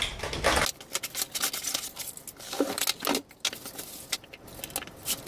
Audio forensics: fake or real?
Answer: real